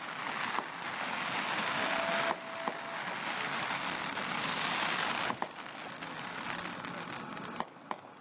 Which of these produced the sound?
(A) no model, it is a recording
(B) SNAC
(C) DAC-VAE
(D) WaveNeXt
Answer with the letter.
A